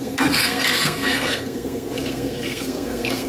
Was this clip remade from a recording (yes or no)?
yes